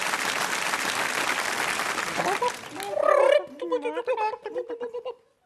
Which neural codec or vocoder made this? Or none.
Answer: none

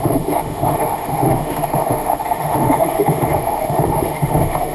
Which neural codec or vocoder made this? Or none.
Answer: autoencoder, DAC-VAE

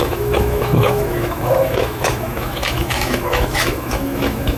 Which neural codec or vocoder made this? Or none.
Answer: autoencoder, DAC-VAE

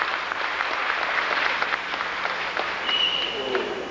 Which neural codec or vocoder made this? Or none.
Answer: none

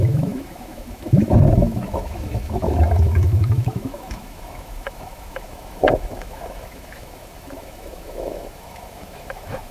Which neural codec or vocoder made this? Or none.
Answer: autoencoder, DAC-VAE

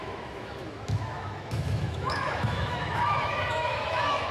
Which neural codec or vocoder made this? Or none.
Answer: autoencoder, DAC-VAE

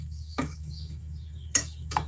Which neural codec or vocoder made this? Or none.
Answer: autoencoder, DAC-VAE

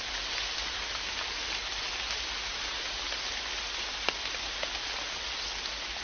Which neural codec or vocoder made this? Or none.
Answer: none